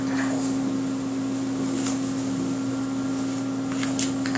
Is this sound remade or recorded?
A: recorded